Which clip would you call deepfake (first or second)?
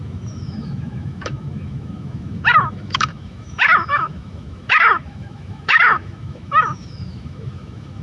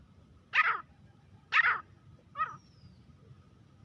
first